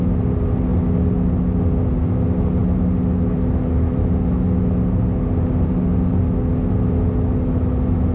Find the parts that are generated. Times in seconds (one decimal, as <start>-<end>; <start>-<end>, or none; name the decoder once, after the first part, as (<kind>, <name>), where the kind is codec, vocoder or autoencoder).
none